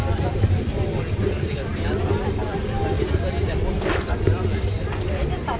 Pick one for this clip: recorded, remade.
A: remade